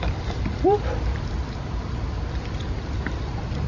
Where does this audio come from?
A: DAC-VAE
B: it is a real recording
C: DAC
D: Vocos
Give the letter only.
B